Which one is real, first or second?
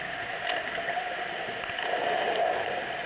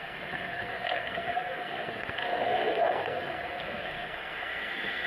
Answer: first